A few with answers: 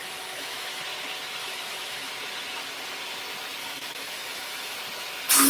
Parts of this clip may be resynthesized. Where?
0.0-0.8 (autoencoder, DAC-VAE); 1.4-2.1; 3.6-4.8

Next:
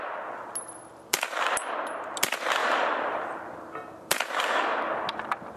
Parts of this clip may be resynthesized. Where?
1.1-1.7 (vocoder, BigVGAN v2); 2.6-4.8